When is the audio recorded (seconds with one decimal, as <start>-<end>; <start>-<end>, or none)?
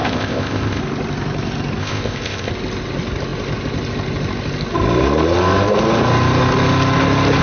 0.8-1.8; 2.5-7.4